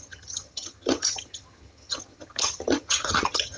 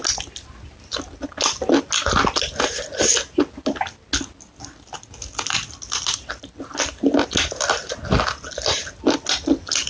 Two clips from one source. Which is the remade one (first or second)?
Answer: first